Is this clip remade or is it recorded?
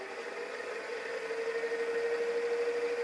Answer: recorded